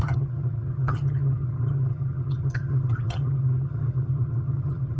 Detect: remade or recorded remade